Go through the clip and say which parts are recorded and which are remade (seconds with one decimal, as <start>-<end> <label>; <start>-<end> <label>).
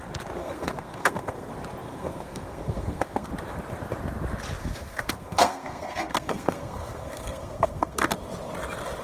0.0-0.4 recorded; 0.4-1.5 remade; 1.5-1.9 recorded; 1.9-3.3 remade; 3.3-4.6 recorded; 4.6-8.0 remade; 8.0-9.0 recorded